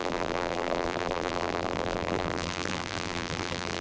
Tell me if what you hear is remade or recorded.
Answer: remade